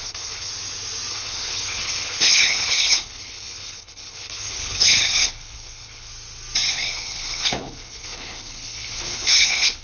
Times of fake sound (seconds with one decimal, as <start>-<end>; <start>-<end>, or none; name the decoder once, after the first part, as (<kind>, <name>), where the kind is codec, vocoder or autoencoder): 0.0-0.5 (codec, HILCodec); 1.1-6.1; 6.7-9.8